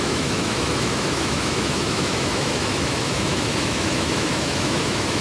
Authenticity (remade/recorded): remade